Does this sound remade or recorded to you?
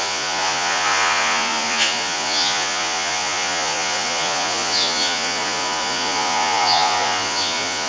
remade